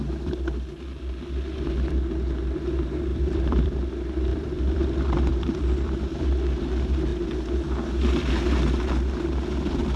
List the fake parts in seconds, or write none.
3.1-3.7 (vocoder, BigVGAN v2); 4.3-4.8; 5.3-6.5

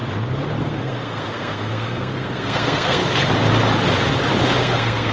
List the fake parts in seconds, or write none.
0.6-3.0 (codec, SNAC); 4.6-5.1

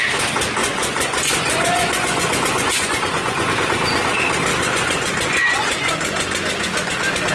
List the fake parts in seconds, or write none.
0.6-3.5 (vocoder, Vocos); 4.5-7.3